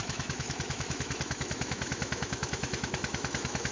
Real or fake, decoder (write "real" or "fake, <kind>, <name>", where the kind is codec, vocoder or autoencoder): fake, autoencoder, DAC-VAE